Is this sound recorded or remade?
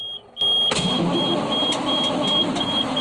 recorded